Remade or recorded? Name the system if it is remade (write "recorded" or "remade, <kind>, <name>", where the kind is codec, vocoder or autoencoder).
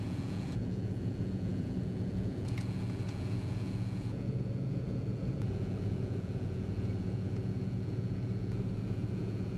remade, vocoder, Vocos